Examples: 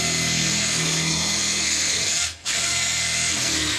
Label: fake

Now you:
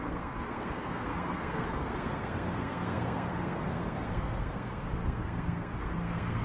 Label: fake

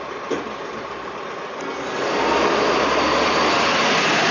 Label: real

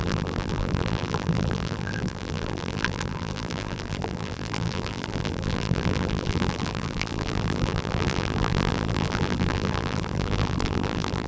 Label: fake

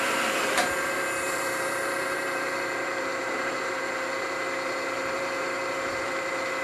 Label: fake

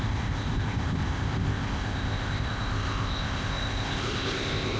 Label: fake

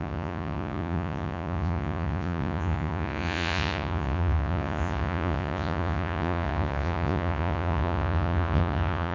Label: fake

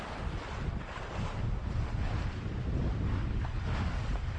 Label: real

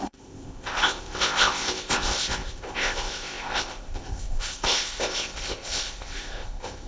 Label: fake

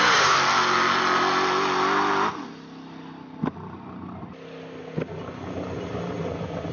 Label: real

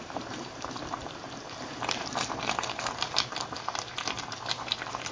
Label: fake